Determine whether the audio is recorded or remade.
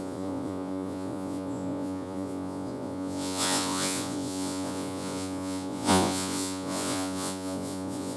remade